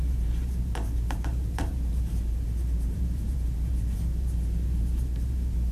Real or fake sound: fake